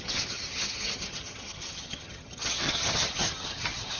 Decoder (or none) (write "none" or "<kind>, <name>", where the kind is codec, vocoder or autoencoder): vocoder, HiFi-GAN